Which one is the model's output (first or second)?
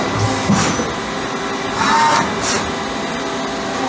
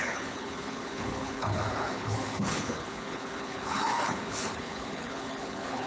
second